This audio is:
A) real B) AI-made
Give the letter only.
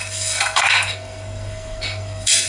B